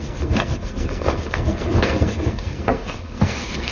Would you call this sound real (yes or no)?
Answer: no